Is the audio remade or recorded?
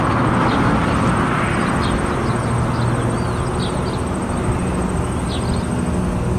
recorded